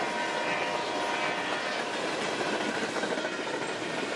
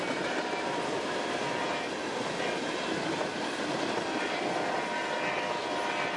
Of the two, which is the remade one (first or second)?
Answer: second